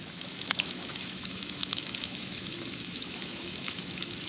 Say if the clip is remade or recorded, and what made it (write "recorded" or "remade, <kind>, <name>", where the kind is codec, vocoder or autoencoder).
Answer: remade, autoencoder, DAC-VAE